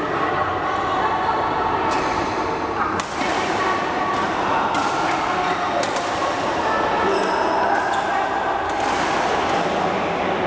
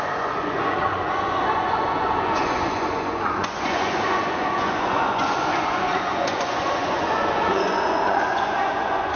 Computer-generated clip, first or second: second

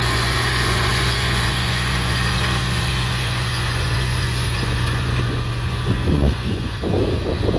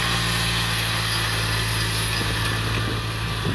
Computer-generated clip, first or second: first